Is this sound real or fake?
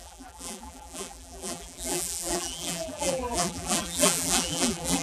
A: fake